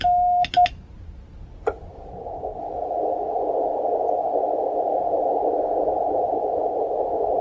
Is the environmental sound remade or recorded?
recorded